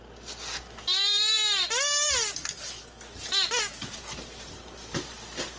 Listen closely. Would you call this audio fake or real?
real